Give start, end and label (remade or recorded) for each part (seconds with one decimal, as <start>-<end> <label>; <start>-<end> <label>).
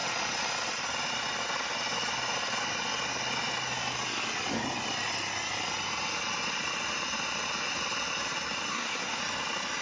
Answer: 0.0-8.7 recorded; 8.7-9.2 remade; 9.2-9.8 recorded